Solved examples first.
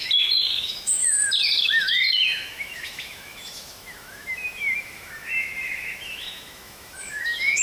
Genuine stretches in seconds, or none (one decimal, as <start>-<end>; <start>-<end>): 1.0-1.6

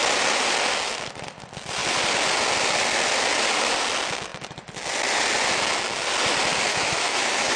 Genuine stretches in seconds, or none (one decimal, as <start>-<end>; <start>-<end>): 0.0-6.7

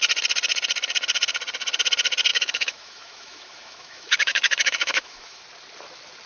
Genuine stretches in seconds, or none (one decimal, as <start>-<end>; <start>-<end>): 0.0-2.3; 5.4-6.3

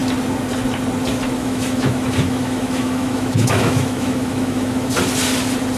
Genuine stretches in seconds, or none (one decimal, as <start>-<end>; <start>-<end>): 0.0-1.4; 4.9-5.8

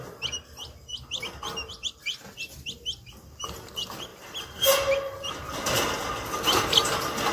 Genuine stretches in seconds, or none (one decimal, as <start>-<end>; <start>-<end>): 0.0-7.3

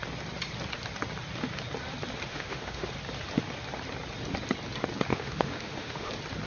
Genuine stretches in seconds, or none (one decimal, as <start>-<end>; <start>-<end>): 0.0-2.3; 2.9-5.1; 6.1-6.5

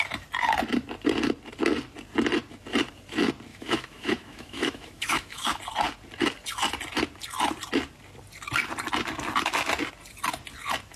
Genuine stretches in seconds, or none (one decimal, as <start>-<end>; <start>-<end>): 0.0-3.5; 5.6-11.0